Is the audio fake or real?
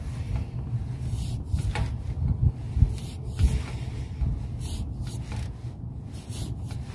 real